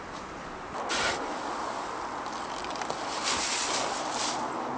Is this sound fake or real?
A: real